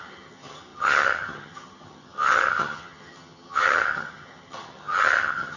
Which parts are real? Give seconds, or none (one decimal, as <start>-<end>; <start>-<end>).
none